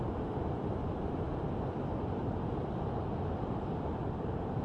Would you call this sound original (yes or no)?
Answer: no